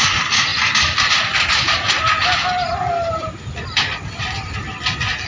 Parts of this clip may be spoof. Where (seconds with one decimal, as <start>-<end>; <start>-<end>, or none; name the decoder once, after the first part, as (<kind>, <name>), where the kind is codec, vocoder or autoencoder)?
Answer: none